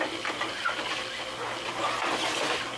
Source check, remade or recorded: recorded